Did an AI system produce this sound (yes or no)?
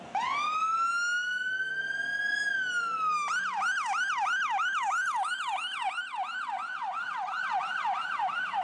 no